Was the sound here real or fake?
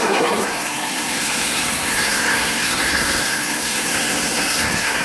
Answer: fake